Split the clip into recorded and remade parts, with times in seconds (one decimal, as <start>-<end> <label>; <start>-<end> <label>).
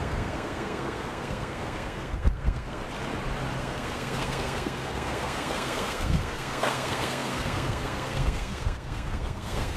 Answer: 0.0-2.8 remade; 2.8-3.6 recorded; 3.6-9.8 remade